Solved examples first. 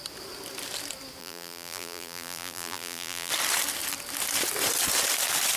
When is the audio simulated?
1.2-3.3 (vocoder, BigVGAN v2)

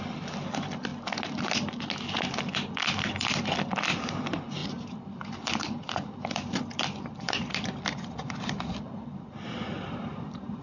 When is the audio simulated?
0.0-0.9 (vocoder, BigVGAN v2); 2.3-10.6

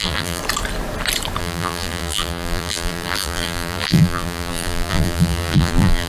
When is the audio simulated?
0.0-0.4 (vocoder, BigVGAN v2); 1.4-6.1

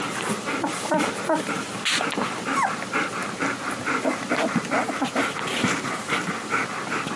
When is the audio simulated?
0.0-7.2 (vocoder, BigVGAN v2)

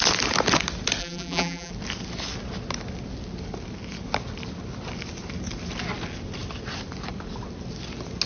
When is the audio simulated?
1.0-1.7 (vocoder, BigVGAN v2)

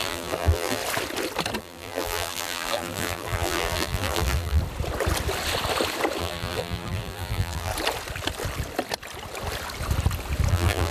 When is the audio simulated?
0.0-0.8 (vocoder, BigVGAN v2); 1.6-4.6; 6.2-7.7; 10.5-10.9